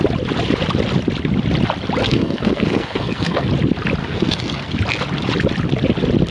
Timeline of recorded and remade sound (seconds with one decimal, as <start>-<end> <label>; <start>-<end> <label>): 0.0-2.0 recorded; 2.0-3.5 remade; 3.5-4.0 recorded; 4.0-4.7 remade; 4.7-6.3 recorded